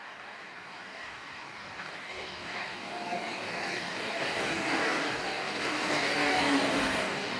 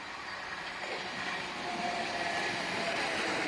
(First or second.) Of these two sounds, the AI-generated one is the first